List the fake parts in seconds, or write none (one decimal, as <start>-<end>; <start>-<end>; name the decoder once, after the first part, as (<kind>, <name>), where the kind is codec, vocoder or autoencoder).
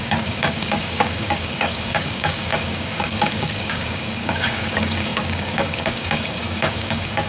0.0-7.3 (codec, DAC)